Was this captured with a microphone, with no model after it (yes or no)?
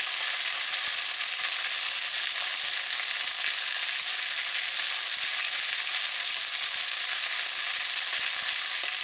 yes